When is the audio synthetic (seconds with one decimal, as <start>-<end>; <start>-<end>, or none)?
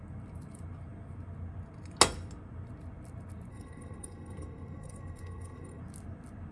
3.5-5.8